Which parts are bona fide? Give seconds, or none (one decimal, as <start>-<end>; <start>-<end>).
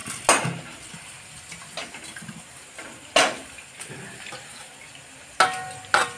0.0-6.2